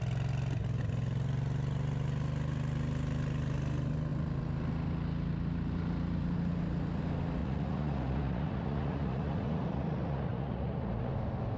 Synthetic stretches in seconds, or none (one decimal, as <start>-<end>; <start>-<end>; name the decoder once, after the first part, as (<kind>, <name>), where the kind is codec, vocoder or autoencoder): 7.4-11.1 (vocoder, Vocos)